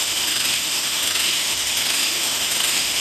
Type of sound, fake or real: fake